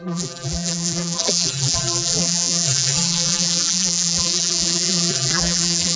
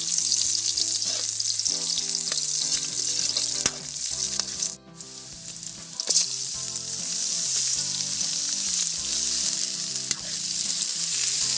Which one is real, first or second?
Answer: second